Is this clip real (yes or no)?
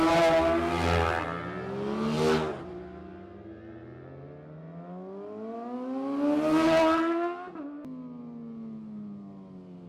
yes